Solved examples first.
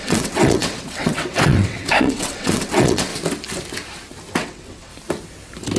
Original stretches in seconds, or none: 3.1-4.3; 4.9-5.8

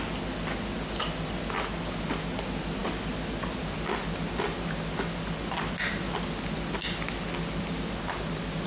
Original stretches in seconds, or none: 0.0-8.7